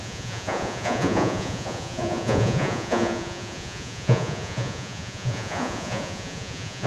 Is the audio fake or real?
fake